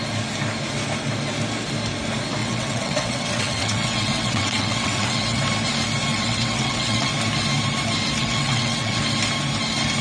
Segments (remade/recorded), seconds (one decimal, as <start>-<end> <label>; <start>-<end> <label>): 0.0-2.4 recorded; 2.4-5.4 remade; 5.4-6.1 recorded; 6.1-7.1 remade; 7.1-8.2 recorded; 8.2-9.0 remade; 9.0-10.0 recorded

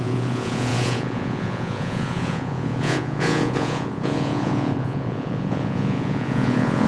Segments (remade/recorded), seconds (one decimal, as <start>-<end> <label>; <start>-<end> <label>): 0.0-6.9 remade